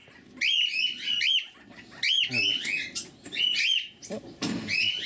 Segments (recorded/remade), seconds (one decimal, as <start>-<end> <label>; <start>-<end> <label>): 0.0-5.1 recorded